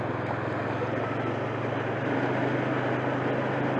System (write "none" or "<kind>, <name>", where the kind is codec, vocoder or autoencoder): none